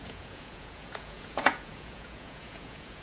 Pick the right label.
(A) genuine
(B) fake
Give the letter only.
B